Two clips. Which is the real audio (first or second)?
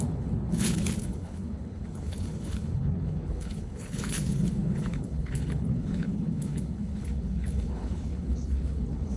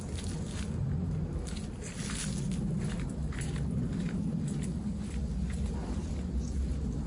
second